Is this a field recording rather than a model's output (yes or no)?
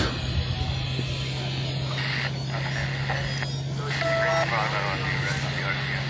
yes